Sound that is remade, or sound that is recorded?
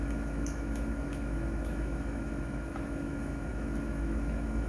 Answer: remade